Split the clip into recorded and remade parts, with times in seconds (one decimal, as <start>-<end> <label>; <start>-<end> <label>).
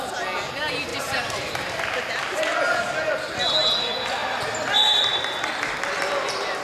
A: 0.0-6.6 recorded